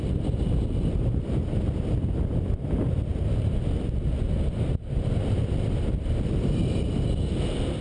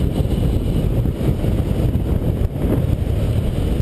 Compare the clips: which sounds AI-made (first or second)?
first